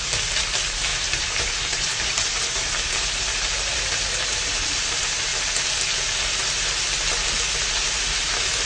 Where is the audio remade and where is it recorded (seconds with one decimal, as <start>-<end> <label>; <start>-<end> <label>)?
0.0-5.3 remade; 5.3-7.7 recorded; 7.7-8.7 remade